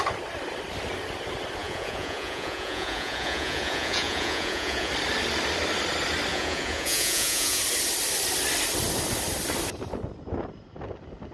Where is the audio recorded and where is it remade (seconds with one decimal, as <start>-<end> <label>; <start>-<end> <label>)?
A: 0.0-1.6 recorded; 1.6-4.9 remade; 4.9-6.3 recorded; 6.3-7.6 remade; 7.6-11.3 recorded